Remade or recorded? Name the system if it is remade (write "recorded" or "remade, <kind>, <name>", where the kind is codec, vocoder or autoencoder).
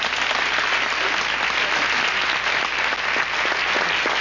recorded